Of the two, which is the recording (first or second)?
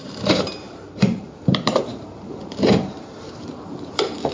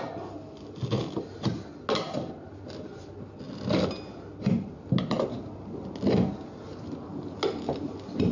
second